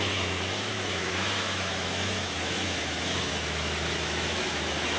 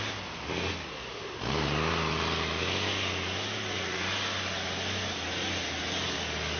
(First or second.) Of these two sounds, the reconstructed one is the first